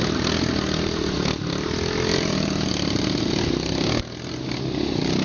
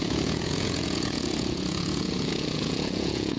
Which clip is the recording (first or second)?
first